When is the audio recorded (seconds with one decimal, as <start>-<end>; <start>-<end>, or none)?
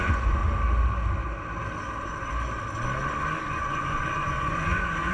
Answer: 0.4-3.5